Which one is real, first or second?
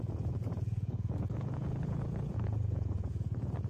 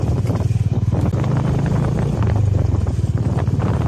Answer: second